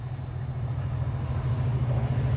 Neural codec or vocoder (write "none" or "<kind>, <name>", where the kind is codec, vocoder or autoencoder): none